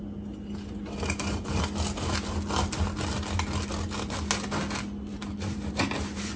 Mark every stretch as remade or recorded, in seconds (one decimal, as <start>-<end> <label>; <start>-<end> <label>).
0.0-5.1 recorded; 5.1-6.4 remade